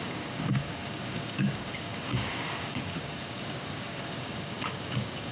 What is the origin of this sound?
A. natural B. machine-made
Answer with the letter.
B